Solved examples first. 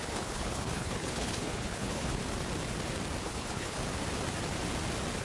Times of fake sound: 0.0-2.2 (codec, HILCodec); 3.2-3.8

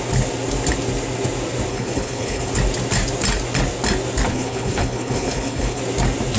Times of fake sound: 1.7-2.5 (codec, HILCodec); 4.3-5.8

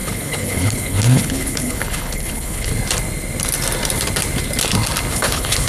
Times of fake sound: 0.0-2.7 (codec, HILCodec); 5.1-5.7

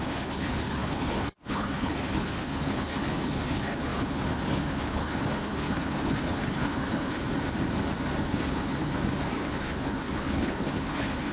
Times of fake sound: 0.0-7.2 (codec, HILCodec); 8.2-11.3